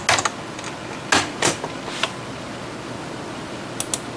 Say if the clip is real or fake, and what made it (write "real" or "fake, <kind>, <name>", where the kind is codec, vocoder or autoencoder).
real